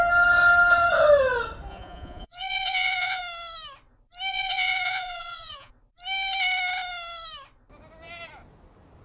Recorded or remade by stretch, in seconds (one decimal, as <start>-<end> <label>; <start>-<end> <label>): 0.0-1.7 recorded; 1.7-3.2 remade; 3.2-4.3 recorded; 4.3-5.7 remade; 5.7-9.0 recorded